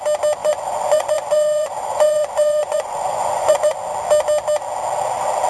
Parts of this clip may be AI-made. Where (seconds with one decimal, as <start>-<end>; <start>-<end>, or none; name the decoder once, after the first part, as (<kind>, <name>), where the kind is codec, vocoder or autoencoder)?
0.4-3.7 (vocoder, Vocos)